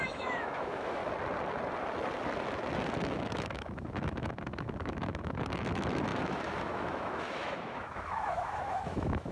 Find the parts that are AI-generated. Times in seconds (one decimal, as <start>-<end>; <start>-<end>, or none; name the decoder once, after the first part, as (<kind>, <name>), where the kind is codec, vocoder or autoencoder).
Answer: 0.0-1.0 (autoencoder, DAC-VAE); 3.0-9.3